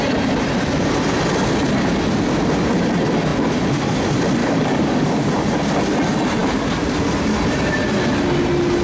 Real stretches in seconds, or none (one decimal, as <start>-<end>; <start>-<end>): 0.0-4.4; 5.5-8.8